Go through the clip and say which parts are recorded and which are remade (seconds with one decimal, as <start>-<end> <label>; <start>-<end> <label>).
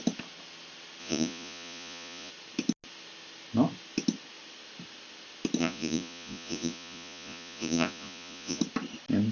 0.0-1.0 recorded; 1.0-2.3 remade; 2.3-5.6 recorded; 5.6-8.6 remade; 8.6-9.3 recorded